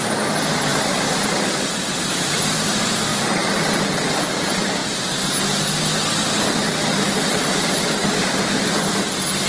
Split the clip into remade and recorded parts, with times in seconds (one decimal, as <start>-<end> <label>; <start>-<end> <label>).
0.0-0.7 recorded; 0.7-2.7 remade; 2.7-3.1 recorded; 3.1-3.7 remade; 3.7-9.5 recorded